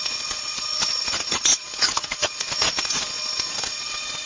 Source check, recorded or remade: remade